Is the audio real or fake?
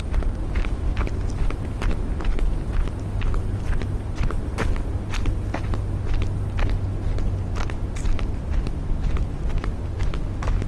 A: real